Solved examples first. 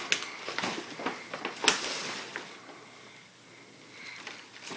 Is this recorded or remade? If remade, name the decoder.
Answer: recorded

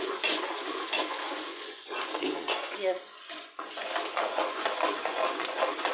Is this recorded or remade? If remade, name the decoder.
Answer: remade, vocoder, Vocos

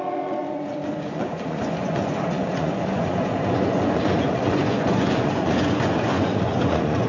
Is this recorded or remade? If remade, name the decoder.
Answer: remade, vocoder, Vocos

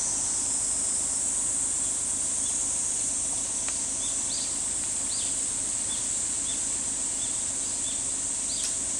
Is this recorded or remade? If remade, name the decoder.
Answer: recorded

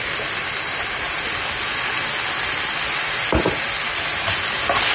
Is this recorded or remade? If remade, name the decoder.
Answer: recorded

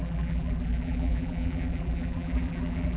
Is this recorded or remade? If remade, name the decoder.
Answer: remade, vocoder, BigVGAN v2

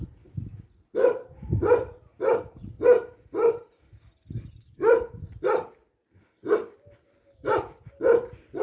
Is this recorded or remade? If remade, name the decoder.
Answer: remade, vocoder, BigVGAN v2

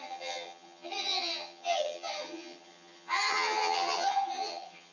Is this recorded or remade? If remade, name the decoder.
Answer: remade, vocoder, HiFi-GAN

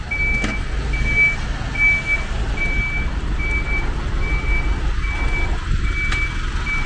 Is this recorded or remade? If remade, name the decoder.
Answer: recorded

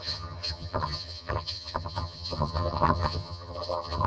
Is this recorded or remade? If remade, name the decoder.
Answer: remade, vocoder, HiFi-GAN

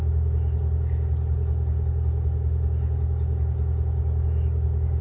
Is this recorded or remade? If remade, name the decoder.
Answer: recorded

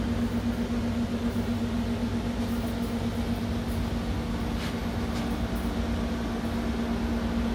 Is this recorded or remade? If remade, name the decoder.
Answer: recorded